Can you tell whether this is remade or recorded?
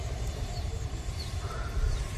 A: remade